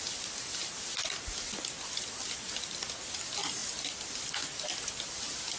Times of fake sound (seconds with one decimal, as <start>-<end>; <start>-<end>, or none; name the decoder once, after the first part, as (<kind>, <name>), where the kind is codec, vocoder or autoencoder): none